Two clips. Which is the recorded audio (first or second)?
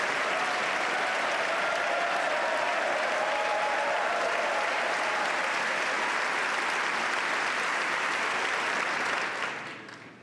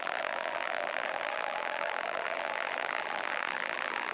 first